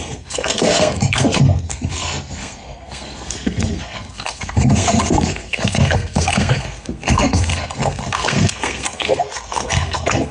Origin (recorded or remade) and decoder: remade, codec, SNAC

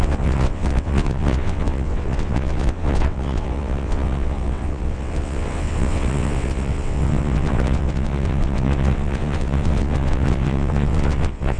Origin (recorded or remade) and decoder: remade, vocoder, WaveNeXt